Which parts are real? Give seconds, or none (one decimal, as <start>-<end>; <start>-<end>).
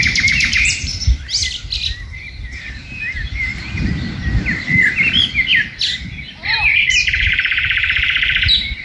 0.9-3.0; 3.5-6.9